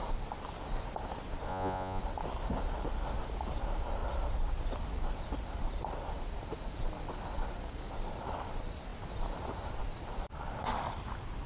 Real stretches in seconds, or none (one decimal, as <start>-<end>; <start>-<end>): 0.0-1.5; 2.0-11.5